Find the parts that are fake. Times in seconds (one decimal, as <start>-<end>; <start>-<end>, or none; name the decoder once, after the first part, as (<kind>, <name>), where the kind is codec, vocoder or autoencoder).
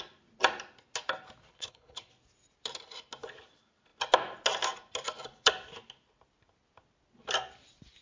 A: 1.5-2.1 (codec, HILCodec)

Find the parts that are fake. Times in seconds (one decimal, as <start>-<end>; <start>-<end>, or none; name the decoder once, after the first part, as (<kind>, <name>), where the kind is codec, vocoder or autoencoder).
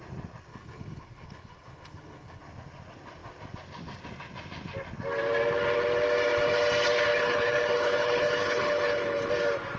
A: 0.5-2.4 (codec, HILCodec); 7.1-9.3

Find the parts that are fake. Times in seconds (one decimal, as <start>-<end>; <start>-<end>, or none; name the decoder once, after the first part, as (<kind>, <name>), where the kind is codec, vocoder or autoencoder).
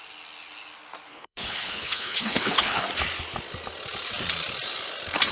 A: 1.1-2.8 (codec, HILCodec)